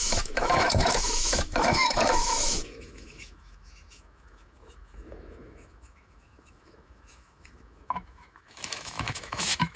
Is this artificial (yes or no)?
yes